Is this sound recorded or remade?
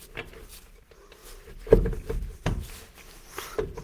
recorded